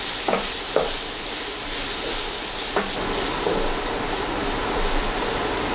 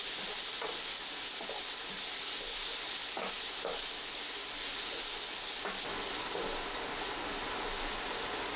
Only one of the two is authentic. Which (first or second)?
second